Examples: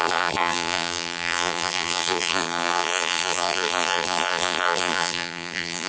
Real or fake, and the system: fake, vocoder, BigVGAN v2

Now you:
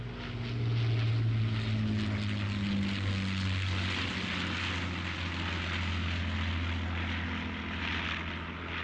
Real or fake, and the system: real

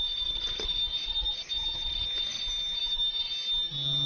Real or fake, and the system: real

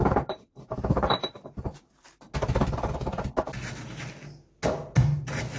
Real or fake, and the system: real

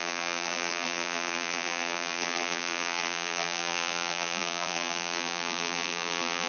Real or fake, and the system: fake, vocoder, BigVGAN v2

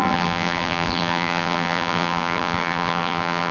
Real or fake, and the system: fake, vocoder, BigVGAN v2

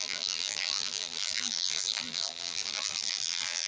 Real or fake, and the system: fake, vocoder, BigVGAN v2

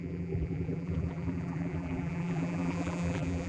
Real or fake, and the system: fake, vocoder, BigVGAN v2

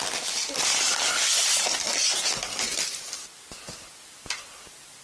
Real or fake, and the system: real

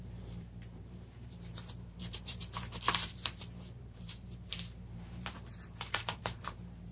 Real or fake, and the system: fake, vocoder, BigVGAN v2